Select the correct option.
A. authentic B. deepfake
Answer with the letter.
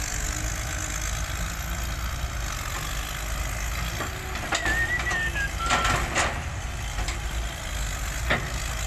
A